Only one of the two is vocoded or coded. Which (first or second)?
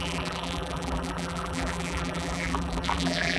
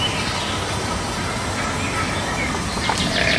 first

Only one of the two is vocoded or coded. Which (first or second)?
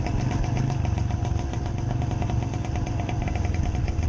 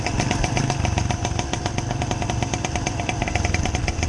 second